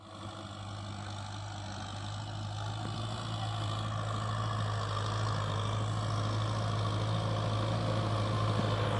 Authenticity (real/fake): real